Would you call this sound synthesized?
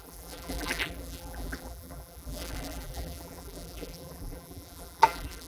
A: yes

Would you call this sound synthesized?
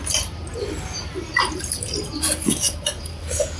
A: no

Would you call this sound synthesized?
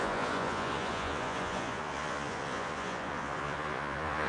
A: yes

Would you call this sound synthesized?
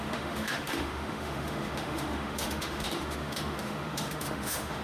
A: yes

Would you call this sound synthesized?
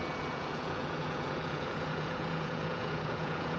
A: yes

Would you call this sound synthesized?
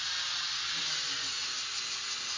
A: no